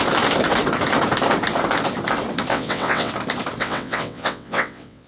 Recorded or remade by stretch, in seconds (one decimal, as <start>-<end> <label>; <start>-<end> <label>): 0.0-2.5 recorded; 2.5-3.1 remade; 3.1-3.6 recorded; 3.6-5.1 remade